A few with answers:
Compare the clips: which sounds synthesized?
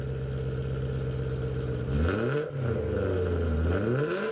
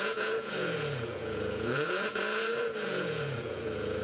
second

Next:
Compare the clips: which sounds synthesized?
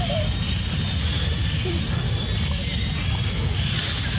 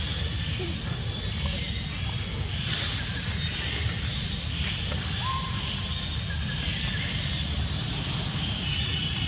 second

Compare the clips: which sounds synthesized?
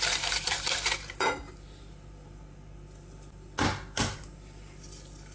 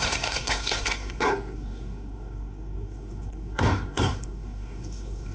second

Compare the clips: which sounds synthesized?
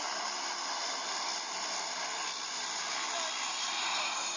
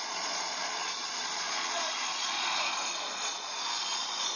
second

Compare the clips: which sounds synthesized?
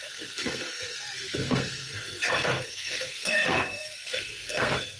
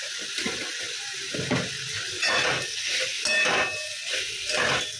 first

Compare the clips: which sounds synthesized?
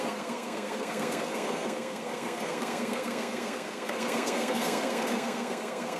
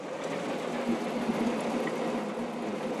first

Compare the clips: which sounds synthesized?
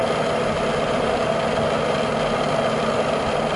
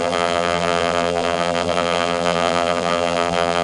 second